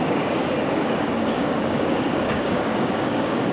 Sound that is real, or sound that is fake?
fake